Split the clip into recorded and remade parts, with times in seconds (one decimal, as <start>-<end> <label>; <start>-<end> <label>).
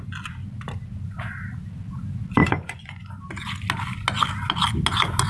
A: 0.0-2.4 recorded; 2.4-3.2 remade; 3.2-5.3 recorded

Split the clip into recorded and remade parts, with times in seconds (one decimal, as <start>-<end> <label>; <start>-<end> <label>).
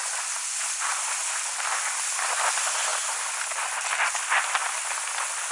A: 0.0-5.5 recorded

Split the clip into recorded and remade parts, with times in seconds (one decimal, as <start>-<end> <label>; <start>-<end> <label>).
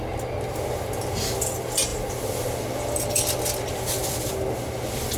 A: 0.0-5.2 recorded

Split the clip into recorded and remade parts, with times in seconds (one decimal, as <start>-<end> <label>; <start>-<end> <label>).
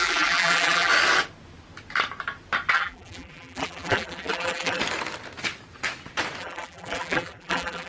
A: 0.0-0.9 remade; 0.9-2.7 recorded; 2.7-4.8 remade; 4.8-6.4 recorded; 6.4-7.9 remade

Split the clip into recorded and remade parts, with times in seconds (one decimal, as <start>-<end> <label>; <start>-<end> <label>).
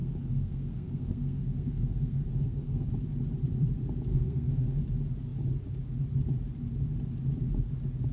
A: 0.0-2.9 remade; 2.9-4.1 recorded; 4.1-4.8 remade; 4.8-8.1 recorded